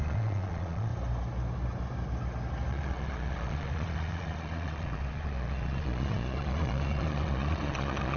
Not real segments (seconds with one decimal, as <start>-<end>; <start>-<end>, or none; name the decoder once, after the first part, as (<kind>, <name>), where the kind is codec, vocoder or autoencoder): 0.0-0.9 (vocoder, Vocos); 2.7-8.2